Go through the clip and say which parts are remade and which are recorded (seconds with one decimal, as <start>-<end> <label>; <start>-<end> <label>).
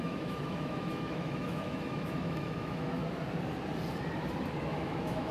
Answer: 0.0-3.0 remade; 3.0-4.7 recorded; 4.7-5.3 remade